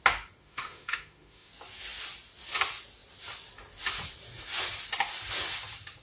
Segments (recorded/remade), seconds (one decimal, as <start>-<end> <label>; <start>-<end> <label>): 0.0-0.4 recorded; 0.4-1.5 remade; 1.5-6.0 recorded